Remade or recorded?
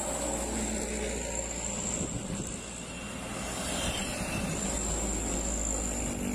recorded